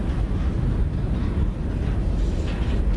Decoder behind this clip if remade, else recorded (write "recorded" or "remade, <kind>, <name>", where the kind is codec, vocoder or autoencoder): recorded